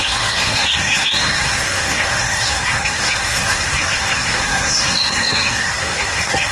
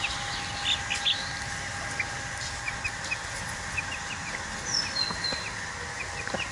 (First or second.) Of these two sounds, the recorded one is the second